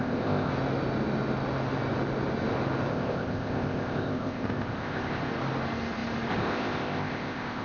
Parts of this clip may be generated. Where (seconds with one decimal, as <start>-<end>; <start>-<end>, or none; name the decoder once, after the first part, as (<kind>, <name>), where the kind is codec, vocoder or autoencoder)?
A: 0.0-0.5 (codec, ZipCodec); 2.9-5.2; 6.3-7.6